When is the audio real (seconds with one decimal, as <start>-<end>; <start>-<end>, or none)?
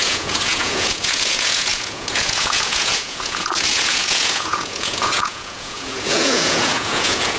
none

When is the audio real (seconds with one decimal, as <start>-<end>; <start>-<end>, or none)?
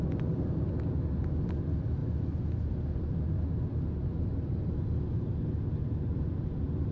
0.0-6.9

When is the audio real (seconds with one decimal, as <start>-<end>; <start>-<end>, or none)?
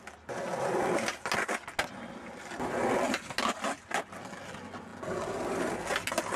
0.0-6.4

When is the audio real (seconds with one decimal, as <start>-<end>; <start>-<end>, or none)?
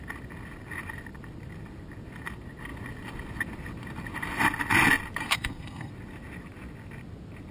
0.0-5.2; 5.9-7.5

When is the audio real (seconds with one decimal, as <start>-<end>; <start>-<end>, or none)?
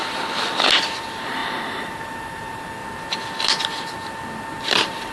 0.0-1.0; 2.8-4.6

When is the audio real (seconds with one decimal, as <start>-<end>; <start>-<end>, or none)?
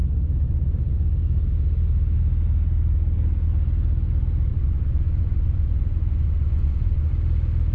0.0-4.5; 7.1-7.7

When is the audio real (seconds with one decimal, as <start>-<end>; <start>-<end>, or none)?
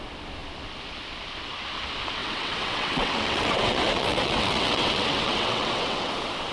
0.0-2.2; 6.1-6.5